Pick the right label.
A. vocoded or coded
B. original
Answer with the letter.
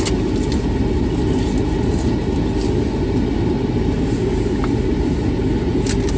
B